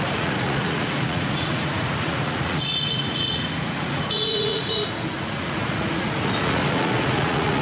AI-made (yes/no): yes